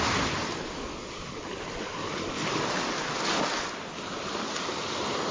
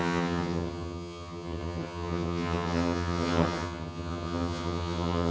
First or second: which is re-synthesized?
second